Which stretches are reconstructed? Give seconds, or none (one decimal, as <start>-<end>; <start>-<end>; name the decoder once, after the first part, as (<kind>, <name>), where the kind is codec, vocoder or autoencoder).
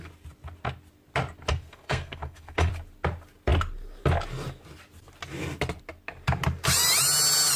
1.5-2.7 (codec, SNAC)